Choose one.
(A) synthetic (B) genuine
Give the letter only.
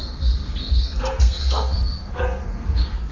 A